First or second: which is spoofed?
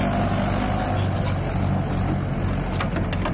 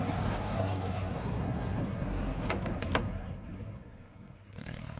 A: second